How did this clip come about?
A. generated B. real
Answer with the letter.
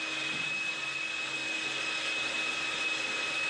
B